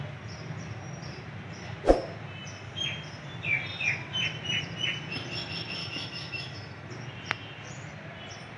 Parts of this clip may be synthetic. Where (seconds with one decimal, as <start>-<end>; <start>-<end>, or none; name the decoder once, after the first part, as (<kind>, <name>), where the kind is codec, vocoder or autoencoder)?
5.8-6.9 (autoencoder, DAC-VAE)